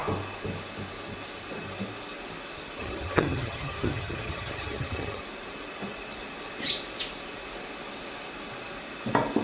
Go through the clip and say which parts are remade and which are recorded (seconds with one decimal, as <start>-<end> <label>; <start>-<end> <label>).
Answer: 0.0-2.8 recorded; 2.8-5.2 remade; 5.2-9.4 recorded